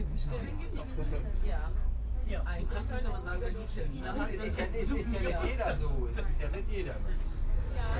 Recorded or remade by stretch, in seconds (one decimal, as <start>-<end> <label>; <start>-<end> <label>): 0.0-2.2 recorded; 2.2-2.8 remade; 2.8-3.3 recorded; 3.3-4.2 remade; 4.2-8.0 recorded